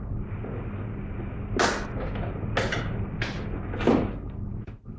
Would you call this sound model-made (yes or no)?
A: no